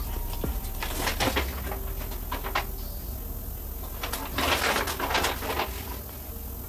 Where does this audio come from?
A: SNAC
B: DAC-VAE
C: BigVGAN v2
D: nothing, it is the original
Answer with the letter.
D